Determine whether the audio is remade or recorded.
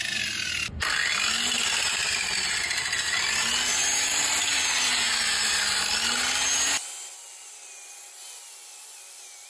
recorded